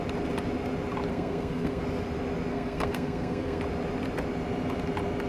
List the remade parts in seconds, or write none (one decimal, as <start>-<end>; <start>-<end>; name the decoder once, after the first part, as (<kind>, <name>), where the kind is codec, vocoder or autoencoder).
1.1-1.8 (codec, SNAC); 2.5-3.6